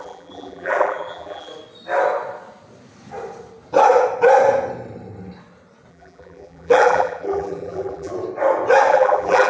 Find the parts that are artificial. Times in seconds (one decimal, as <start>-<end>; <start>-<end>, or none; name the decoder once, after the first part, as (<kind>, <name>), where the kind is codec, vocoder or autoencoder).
0.0-1.5 (vocoder, BigVGAN v2); 5.9-8.1; 8.9-9.5